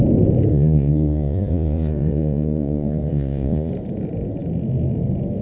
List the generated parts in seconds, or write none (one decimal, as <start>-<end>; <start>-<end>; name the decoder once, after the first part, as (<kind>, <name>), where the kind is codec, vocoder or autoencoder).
0.5-3.7 (vocoder, Vocos)